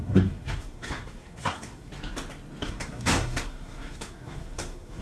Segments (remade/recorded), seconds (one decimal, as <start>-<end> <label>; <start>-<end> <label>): 0.0-1.9 remade; 1.9-2.6 recorded; 2.6-5.0 remade